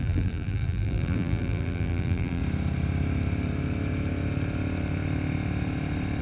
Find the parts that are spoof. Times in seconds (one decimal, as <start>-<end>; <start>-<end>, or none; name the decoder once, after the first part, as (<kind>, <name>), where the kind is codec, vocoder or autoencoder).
0.0-2.4 (vocoder, BigVGAN v2)